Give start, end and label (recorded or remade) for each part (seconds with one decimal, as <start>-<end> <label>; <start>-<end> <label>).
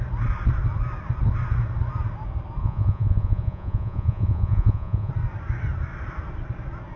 0.0-2.6 recorded; 2.6-5.1 remade; 5.1-7.0 recorded